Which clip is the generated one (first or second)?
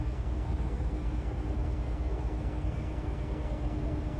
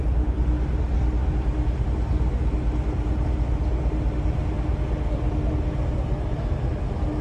first